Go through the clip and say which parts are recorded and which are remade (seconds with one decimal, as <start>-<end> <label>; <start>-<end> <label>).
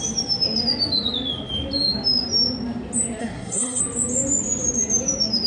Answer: 0.0-3.2 recorded; 3.2-3.8 remade; 3.8-5.5 recorded